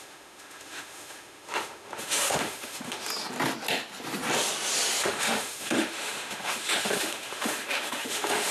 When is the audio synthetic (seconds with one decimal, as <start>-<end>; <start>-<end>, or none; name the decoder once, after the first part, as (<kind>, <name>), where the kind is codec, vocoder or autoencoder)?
0.0-3.1 (autoencoder, DAC-VAE); 5.0-8.5